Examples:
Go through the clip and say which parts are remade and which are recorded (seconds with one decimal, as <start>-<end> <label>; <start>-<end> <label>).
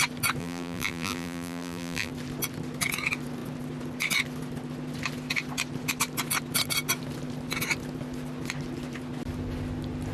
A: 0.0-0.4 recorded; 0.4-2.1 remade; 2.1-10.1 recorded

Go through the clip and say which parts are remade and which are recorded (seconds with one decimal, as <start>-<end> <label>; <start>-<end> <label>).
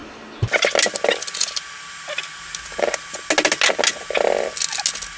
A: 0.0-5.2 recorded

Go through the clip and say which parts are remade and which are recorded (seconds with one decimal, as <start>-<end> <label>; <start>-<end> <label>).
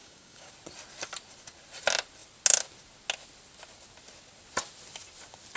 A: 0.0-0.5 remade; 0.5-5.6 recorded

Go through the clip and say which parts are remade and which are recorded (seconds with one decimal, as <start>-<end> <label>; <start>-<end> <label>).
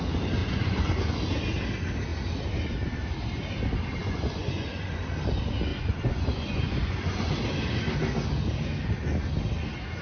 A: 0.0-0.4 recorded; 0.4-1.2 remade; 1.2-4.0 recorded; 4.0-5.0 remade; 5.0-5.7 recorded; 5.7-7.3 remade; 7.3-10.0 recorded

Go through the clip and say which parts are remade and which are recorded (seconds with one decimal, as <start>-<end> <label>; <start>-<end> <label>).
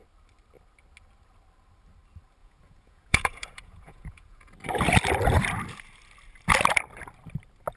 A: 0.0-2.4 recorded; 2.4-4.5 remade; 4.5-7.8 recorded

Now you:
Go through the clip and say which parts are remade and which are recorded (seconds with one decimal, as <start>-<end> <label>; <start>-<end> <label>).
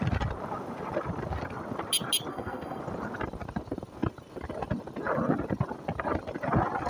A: 0.0-2.3 recorded; 2.3-2.8 remade; 2.8-6.9 recorded